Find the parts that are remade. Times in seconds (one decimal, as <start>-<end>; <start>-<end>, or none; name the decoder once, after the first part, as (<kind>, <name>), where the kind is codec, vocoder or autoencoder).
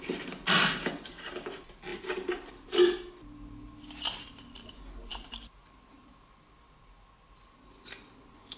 1.9-2.5 (vocoder, BigVGAN v2); 5.1-6.1